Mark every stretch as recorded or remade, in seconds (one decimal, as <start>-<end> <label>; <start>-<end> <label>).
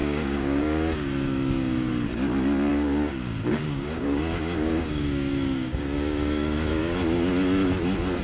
0.0-1.9 remade; 1.9-2.7 recorded; 2.7-7.0 remade; 7.0-8.2 recorded